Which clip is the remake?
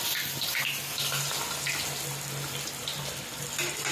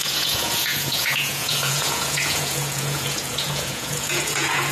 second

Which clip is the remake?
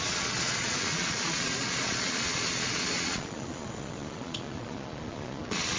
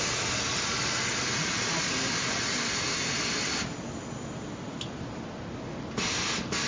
first